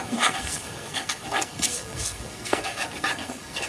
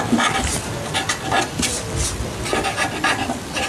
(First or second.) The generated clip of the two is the first